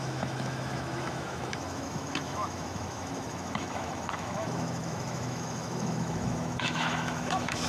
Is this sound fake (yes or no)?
yes